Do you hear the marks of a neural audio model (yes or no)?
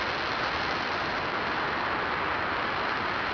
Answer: no